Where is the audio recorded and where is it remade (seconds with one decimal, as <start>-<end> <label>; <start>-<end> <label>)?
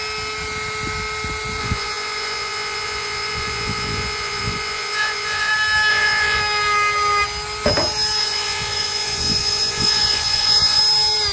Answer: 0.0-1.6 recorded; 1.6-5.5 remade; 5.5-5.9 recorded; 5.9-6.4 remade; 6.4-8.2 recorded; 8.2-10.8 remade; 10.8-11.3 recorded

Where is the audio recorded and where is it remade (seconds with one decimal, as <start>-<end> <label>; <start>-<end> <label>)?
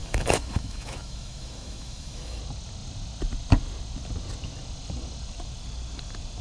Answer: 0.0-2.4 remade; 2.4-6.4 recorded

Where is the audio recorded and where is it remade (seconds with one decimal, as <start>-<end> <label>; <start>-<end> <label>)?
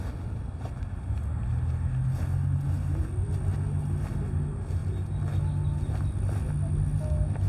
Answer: 0.0-7.5 recorded